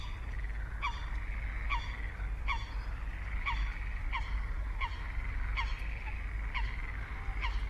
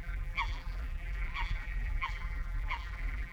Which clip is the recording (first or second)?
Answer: first